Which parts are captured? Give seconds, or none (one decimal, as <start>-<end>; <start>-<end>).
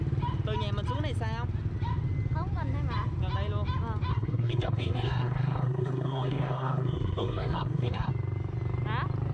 0.0-4.1; 8.1-9.3